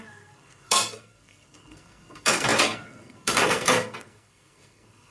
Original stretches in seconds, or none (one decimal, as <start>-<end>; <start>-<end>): none